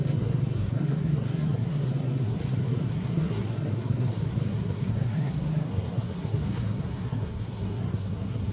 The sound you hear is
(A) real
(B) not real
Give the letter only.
B